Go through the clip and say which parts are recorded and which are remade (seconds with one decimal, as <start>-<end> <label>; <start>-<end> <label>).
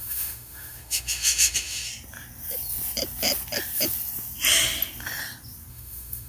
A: 0.0-1.9 remade; 1.9-5.7 recorded; 5.7-6.3 remade